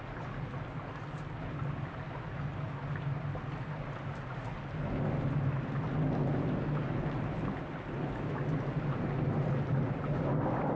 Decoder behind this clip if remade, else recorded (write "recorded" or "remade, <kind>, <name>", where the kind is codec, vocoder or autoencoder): recorded